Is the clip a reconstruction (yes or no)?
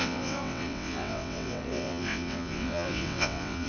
yes